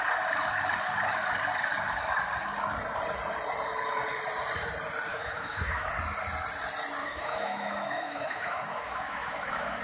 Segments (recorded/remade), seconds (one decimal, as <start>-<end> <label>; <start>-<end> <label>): 0.0-5.1 recorded; 5.1-5.9 remade; 5.9-7.0 recorded; 7.0-9.8 remade